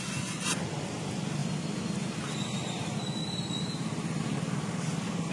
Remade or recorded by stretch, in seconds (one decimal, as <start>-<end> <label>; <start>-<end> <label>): 0.0-5.3 recorded